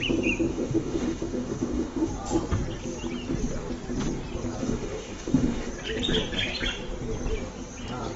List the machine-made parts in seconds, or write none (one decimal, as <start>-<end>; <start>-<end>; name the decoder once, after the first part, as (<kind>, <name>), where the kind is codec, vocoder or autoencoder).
0.5-2.1 (autoencoder, DAC-VAE); 4.6-5.7